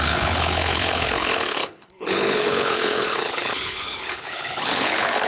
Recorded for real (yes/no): no